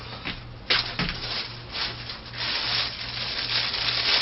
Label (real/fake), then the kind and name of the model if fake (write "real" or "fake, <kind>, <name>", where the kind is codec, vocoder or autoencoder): real